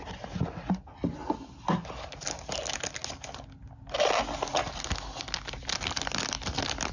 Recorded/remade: recorded